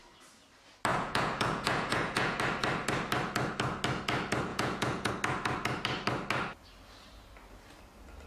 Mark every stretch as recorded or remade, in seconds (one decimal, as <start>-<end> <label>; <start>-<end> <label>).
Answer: 0.0-0.9 recorded; 0.9-2.4 remade; 2.4-4.5 recorded; 4.5-5.1 remade; 5.1-8.3 recorded